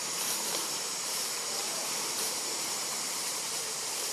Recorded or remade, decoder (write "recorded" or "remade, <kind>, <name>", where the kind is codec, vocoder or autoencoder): remade, vocoder, BigVGAN v2